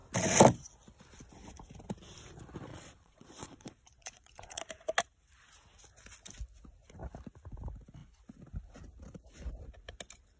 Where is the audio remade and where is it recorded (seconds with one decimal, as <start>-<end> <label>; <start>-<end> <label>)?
0.0-2.7 recorded; 2.7-4.6 remade; 4.6-10.4 recorded